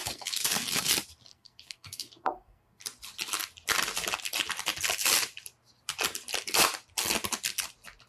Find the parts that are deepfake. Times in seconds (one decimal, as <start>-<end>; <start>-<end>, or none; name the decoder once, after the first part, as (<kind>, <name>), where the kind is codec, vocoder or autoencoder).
0.0-0.9 (codec, SNAC); 1.3-2.8